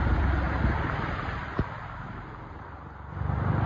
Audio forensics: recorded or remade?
recorded